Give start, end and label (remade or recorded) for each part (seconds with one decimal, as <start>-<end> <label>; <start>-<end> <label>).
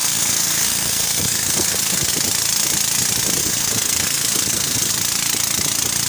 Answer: 0.0-2.1 remade; 2.1-3.4 recorded; 3.4-4.9 remade; 4.9-6.1 recorded